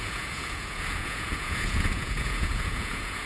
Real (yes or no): no